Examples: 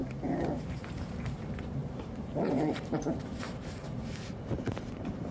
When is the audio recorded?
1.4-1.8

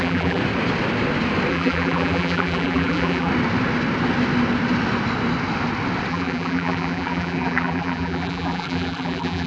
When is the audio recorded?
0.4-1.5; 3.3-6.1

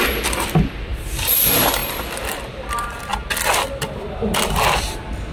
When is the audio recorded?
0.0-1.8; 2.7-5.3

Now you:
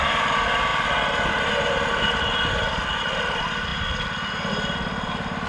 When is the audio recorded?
0.0-5.5

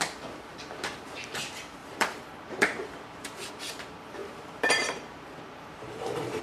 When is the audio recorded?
0.0-1.8; 3.5-4.2

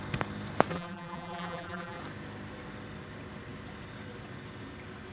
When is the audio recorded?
0.0-0.7; 2.0-5.1

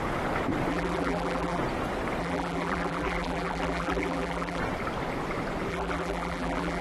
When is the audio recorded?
0.0-0.7; 1.6-2.2; 4.6-5.7